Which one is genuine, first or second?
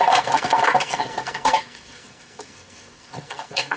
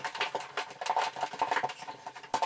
second